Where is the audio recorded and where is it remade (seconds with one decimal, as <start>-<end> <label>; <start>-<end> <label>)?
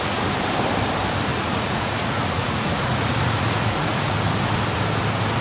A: 0.0-1.3 recorded; 1.3-4.3 remade; 4.3-5.4 recorded